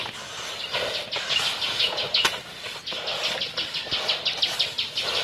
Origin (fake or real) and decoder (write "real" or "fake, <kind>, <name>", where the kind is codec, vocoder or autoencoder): real